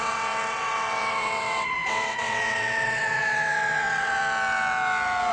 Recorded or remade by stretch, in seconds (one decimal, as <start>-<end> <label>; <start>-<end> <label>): 0.0-4.2 remade; 4.2-5.3 recorded

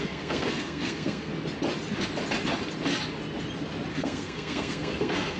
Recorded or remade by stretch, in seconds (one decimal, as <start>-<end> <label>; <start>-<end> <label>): 0.0-1.3 remade; 1.3-3.9 recorded; 3.9-5.4 remade